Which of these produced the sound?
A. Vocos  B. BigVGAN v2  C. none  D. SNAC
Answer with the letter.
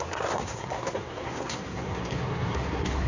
D